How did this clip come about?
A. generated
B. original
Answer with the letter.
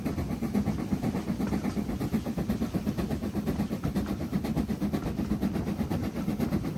A